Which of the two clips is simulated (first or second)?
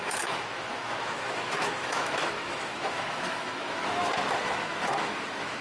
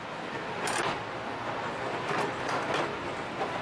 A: first